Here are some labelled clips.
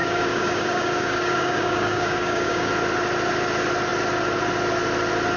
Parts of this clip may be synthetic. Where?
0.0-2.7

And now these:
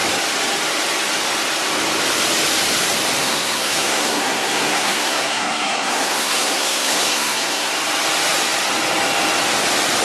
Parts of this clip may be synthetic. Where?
3.2-7.7

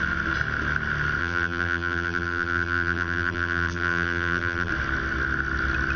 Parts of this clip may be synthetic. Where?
1.2-4.7

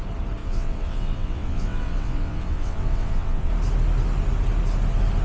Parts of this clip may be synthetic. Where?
0.4-3.5